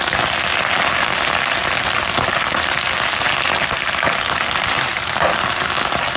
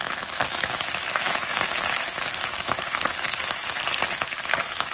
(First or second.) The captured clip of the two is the first